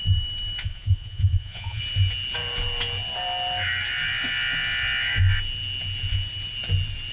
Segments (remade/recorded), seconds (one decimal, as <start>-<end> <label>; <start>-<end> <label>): 0.0-0.6 recorded; 0.6-1.8 remade; 1.8-7.1 recorded